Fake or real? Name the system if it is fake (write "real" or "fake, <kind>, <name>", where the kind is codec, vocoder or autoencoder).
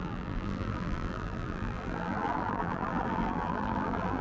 fake, vocoder, BigVGAN v2